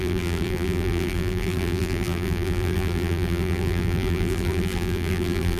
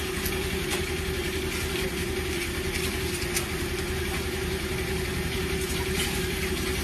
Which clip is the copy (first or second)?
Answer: first